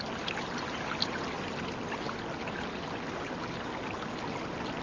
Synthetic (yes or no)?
no